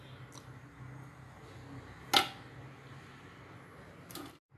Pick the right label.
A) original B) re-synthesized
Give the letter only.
A